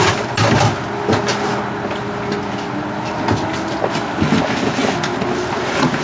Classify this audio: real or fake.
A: real